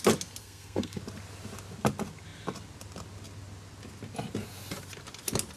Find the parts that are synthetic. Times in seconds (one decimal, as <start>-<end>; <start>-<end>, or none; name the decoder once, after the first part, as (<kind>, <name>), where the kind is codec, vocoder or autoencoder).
0.4-1.0 (codec, SNAC)